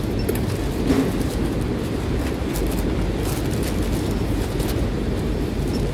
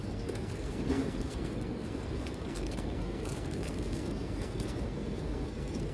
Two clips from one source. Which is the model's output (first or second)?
second